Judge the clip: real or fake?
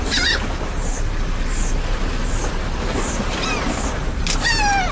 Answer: real